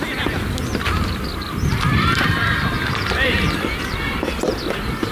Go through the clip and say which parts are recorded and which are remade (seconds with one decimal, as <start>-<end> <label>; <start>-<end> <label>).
0.0-1.3 recorded; 1.3-4.3 remade; 4.3-5.1 recorded

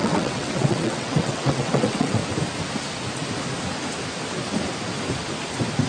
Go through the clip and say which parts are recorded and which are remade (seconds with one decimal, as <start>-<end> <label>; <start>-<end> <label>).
0.0-2.2 remade; 2.2-5.9 recorded

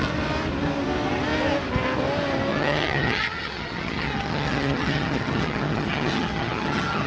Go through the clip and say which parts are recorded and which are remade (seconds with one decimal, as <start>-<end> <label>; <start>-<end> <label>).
0.0-2.5 recorded; 2.5-7.1 remade

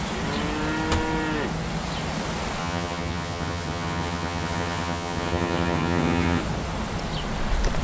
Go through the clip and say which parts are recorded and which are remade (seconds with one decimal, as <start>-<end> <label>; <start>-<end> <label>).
0.0-2.6 recorded; 2.6-6.4 remade; 6.4-7.8 recorded

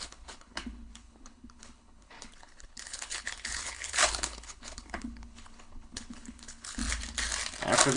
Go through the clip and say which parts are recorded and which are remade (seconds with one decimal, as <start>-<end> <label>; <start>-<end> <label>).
0.0-6.8 remade; 6.8-8.0 recorded

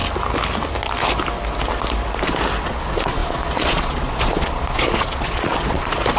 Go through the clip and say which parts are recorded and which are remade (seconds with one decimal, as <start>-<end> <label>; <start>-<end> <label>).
0.0-2.6 recorded; 2.6-6.2 remade